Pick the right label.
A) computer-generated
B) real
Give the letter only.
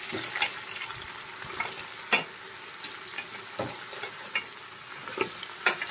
B